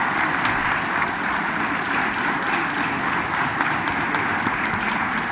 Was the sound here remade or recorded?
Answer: recorded